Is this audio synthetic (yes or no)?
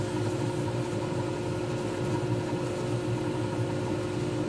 no